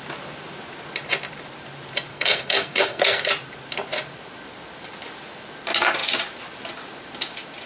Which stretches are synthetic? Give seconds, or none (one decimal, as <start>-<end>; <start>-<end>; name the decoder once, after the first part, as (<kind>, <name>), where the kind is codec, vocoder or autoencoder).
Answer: 2.1-3.3 (codec, SNAC)